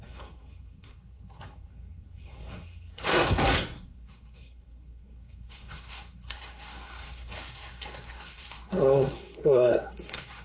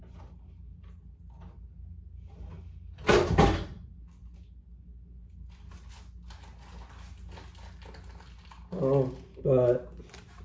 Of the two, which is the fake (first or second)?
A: first